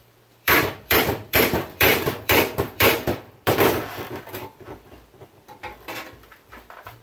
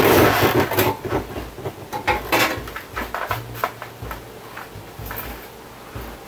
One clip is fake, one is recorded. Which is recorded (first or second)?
second